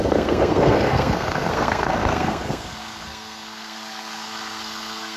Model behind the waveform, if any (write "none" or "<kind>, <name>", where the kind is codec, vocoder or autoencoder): codec, SNAC